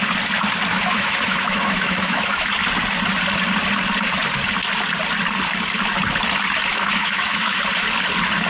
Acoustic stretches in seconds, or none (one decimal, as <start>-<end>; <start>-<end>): 0.0-0.7; 2.5-6.7; 7.6-8.5